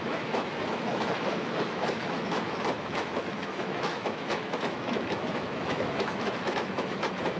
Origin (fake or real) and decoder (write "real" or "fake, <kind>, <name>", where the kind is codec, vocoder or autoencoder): fake, autoencoder, DAC-VAE